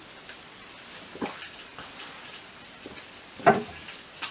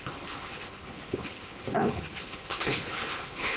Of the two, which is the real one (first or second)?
first